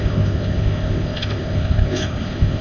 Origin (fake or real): fake